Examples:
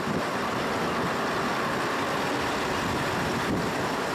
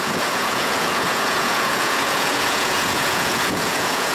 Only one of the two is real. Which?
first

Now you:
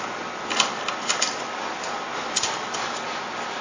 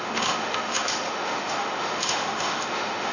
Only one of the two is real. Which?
first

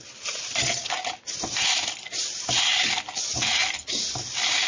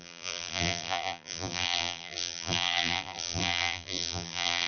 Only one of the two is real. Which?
first